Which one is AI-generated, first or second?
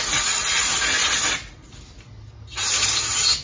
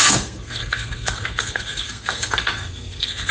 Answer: second